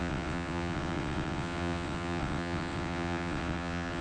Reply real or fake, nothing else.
fake